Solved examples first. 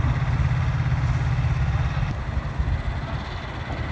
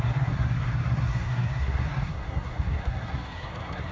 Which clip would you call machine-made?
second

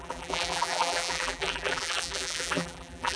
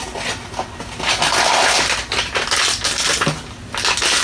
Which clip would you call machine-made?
first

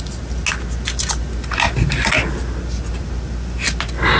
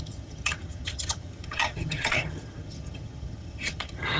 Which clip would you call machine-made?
second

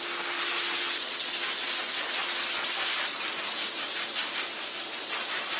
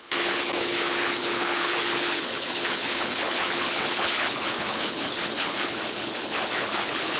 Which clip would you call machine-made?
second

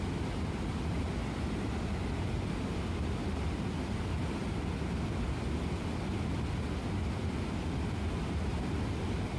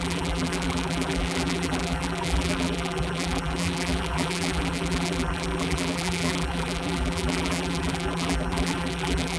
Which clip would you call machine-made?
second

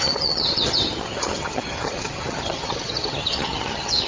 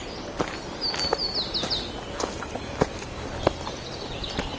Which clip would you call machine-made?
first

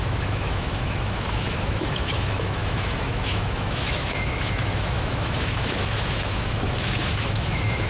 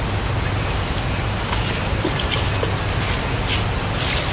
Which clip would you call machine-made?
first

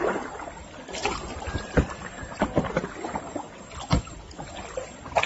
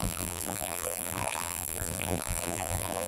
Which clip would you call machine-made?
second